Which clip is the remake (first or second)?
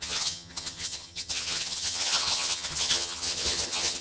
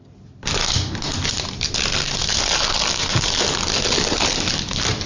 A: first